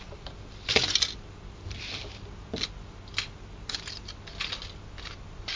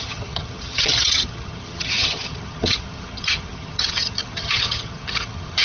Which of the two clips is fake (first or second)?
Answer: second